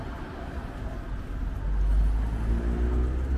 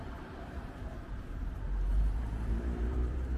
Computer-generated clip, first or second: second